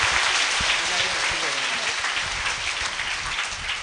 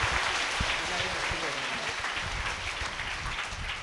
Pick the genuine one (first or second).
first